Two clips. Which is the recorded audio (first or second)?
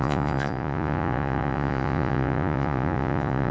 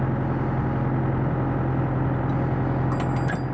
second